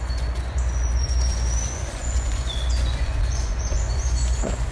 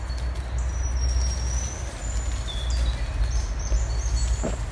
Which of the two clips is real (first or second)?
second